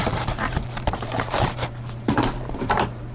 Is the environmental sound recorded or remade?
remade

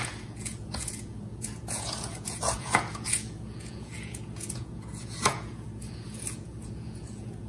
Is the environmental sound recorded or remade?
remade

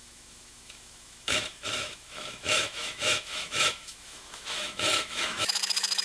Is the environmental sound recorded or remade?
remade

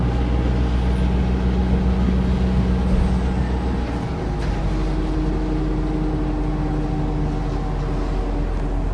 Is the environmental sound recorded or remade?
recorded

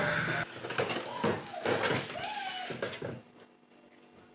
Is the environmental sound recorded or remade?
recorded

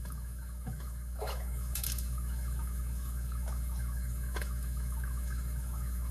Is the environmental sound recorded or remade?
remade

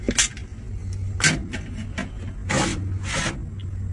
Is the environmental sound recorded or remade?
recorded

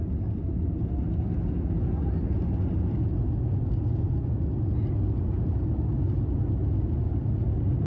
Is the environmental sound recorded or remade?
recorded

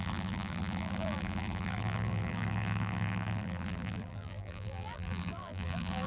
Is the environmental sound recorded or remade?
remade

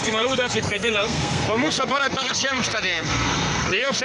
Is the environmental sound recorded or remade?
remade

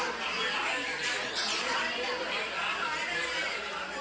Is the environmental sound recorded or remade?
recorded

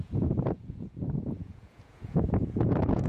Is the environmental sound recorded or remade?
remade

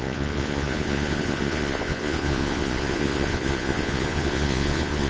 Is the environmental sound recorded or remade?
remade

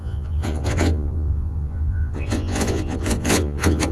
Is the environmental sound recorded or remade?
remade